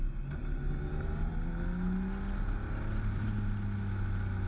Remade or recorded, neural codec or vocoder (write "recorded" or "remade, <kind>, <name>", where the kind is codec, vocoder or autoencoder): recorded